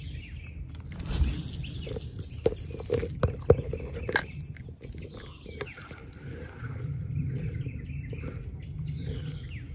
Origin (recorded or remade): recorded